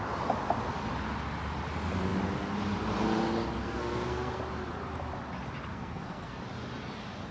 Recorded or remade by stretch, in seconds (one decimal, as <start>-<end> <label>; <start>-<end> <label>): 0.0-3.6 recorded; 3.6-4.4 remade; 4.4-5.7 recorded; 5.7-6.4 remade; 6.4-7.3 recorded